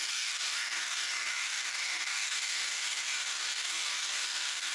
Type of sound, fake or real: fake